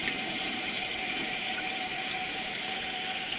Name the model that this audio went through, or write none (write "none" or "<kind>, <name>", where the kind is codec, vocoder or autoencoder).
vocoder, BigVGAN v2